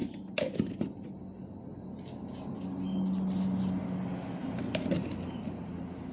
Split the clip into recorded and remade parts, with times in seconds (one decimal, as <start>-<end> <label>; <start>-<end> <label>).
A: 0.0-1.2 remade; 1.2-4.4 recorded; 4.4-4.9 remade; 4.9-6.1 recorded